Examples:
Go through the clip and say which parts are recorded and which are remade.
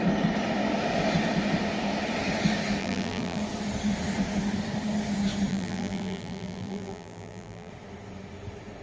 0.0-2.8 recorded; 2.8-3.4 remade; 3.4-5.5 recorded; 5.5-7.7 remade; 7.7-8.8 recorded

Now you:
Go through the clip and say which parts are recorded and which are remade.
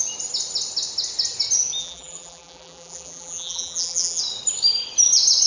0.0-1.8 recorded; 1.8-4.2 remade; 4.2-5.5 recorded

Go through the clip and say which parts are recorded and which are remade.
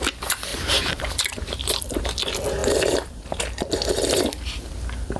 0.0-0.5 recorded; 0.5-2.0 remade; 2.0-2.6 recorded; 2.6-3.4 remade; 3.4-5.2 recorded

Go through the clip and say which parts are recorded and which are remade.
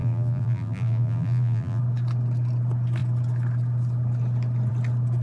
0.0-1.8 remade; 1.8-5.2 recorded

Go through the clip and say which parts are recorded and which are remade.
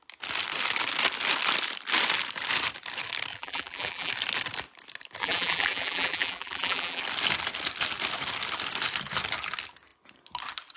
0.0-3.3 recorded; 3.3-4.1 remade; 4.1-5.2 recorded; 5.2-7.0 remade; 7.0-10.8 recorded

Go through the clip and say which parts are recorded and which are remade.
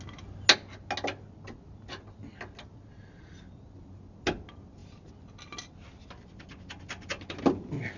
0.0-8.0 recorded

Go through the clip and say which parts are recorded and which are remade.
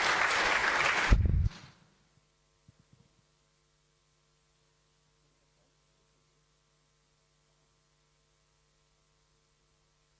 0.0-10.2 recorded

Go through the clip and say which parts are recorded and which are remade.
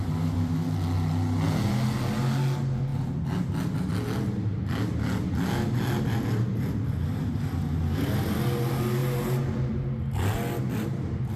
0.0-9.0 recorded; 9.0-9.7 remade; 9.7-11.4 recorded